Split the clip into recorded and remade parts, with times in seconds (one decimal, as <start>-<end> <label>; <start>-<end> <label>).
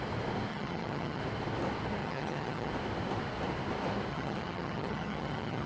0.0-0.5 recorded; 0.5-1.2 remade; 1.2-2.0 recorded; 2.0-2.7 remade; 2.7-4.1 recorded; 4.1-5.7 remade